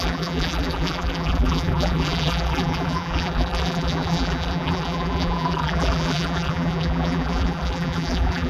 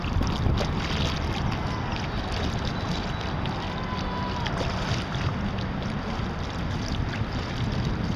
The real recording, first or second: second